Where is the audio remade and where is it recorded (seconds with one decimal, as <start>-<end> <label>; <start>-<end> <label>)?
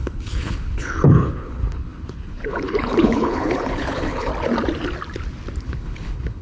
0.0-4.3 remade; 4.3-5.6 recorded; 5.6-6.4 remade